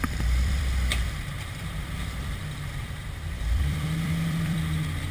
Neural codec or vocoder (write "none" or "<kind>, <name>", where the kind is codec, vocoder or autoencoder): vocoder, BigVGAN v2